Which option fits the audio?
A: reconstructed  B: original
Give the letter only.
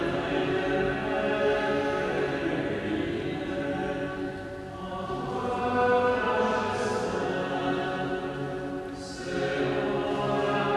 B